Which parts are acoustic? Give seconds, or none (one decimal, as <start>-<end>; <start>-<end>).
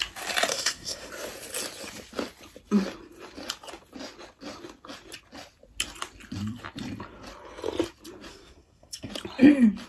0.0-0.5; 1.1-8.3; 9.1-9.9